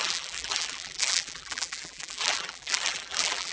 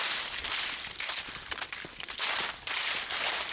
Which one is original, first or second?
second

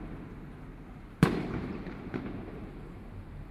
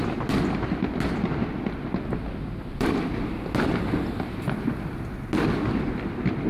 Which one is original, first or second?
second